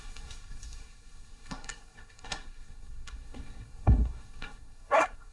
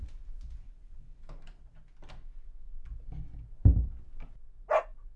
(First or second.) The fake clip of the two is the first